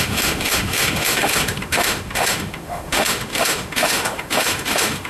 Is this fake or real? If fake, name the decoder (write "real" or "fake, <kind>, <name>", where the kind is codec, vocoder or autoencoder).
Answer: fake, autoencoder, DAC-VAE